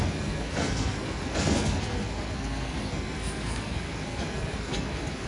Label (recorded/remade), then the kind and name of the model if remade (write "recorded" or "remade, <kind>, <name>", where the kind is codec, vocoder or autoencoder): remade, codec, SNAC